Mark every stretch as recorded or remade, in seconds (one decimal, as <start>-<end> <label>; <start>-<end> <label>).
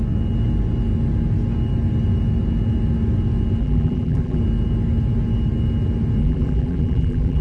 0.0-3.6 recorded; 3.6-4.4 remade; 4.4-6.2 recorded; 6.2-7.4 remade